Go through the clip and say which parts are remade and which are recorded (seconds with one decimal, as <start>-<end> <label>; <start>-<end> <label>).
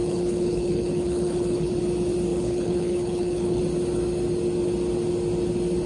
0.0-1.7 remade; 1.7-2.3 recorded; 2.3-3.6 remade; 3.6-5.9 recorded